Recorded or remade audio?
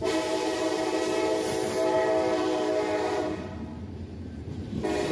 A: remade